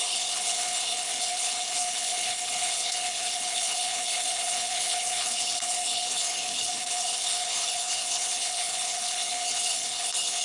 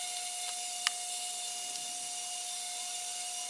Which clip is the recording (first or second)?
second